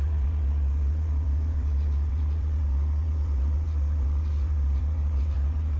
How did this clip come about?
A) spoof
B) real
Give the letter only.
A